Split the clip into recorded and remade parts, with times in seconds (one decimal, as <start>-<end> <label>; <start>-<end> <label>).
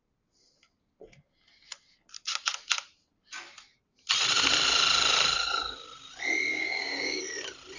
0.0-6.5 recorded; 6.5-7.2 remade; 7.2-7.8 recorded